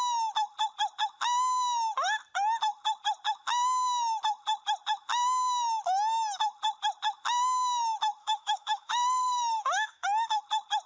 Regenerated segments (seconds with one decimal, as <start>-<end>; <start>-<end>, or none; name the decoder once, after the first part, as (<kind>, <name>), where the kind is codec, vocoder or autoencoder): 8.2-10.4 (autoencoder, DAC-VAE)